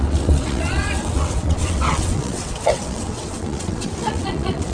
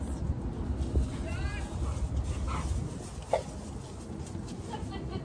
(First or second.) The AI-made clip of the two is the first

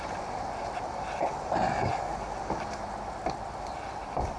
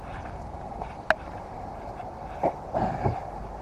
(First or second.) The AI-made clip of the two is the second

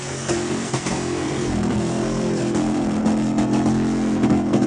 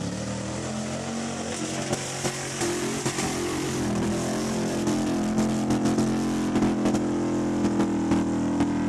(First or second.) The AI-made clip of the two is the first